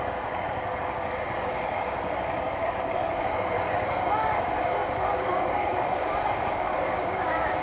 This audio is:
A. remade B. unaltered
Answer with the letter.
A